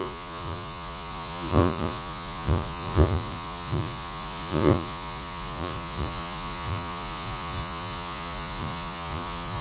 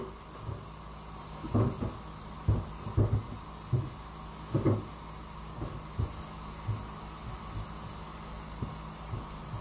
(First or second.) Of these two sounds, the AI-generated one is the first